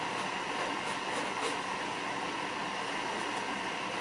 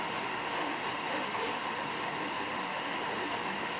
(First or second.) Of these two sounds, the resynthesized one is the second